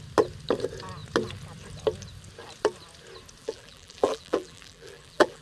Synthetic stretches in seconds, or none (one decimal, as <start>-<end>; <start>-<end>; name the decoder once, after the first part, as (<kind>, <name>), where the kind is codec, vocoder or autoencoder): 3.4-5.4 (vocoder, BigVGAN v2)